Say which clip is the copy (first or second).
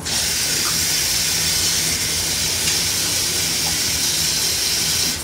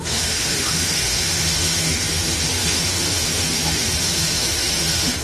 second